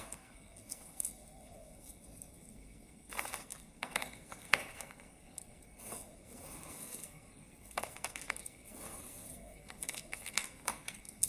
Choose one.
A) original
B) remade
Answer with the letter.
B